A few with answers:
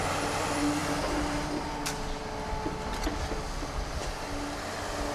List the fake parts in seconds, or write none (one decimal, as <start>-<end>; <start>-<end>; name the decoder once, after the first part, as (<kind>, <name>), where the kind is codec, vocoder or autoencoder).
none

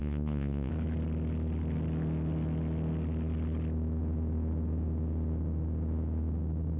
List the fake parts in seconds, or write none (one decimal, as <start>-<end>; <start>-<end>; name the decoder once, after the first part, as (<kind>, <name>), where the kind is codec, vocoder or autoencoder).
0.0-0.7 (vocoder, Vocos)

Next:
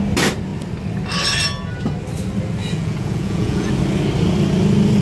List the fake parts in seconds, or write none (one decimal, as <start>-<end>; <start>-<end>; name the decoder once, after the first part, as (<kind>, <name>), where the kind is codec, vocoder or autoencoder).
2.6-3.7 (vocoder, Vocos)

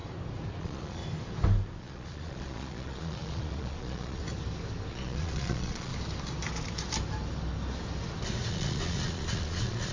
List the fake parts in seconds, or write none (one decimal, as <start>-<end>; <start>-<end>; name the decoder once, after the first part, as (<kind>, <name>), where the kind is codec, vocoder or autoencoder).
0.6-1.0 (vocoder, Vocos); 1.8-4.2; 4.9-5.9; 8.5-9.9

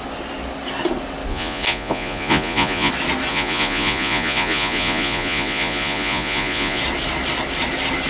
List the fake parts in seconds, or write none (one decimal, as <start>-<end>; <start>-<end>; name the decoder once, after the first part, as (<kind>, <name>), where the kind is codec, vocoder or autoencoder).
1.3-2.9 (vocoder, Vocos); 3.3-6.8

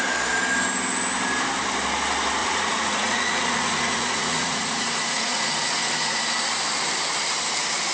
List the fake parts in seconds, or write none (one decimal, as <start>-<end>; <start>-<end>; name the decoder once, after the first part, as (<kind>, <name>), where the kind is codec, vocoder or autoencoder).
2.4-6.2 (vocoder, Vocos)

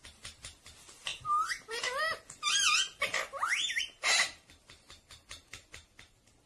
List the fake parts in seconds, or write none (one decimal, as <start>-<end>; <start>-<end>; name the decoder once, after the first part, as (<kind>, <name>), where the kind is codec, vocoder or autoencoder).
none